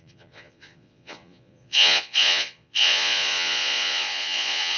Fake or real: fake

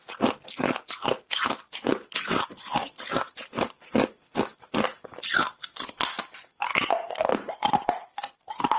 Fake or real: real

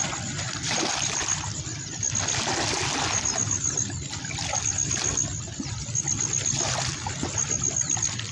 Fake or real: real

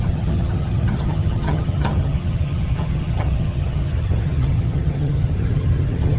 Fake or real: fake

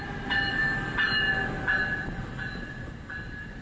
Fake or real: real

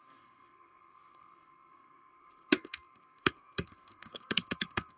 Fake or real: fake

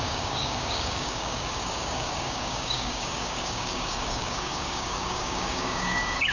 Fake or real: fake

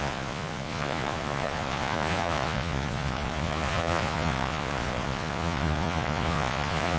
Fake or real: fake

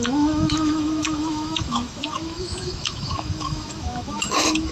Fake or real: fake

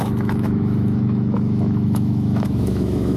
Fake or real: fake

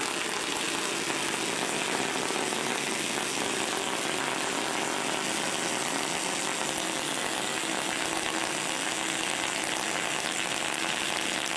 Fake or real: real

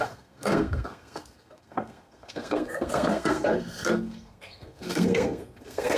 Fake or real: fake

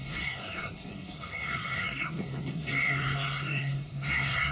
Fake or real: fake